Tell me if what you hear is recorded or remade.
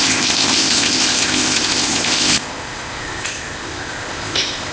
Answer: remade